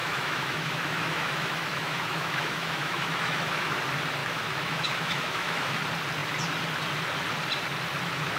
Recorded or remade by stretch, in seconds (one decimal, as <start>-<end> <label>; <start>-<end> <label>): 0.0-3.8 remade; 3.8-4.2 recorded; 4.2-5.8 remade; 5.8-8.4 recorded